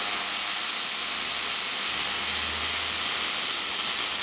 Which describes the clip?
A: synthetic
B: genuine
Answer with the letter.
B